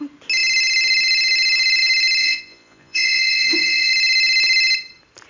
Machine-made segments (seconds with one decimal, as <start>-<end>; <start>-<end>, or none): 2.2-3.9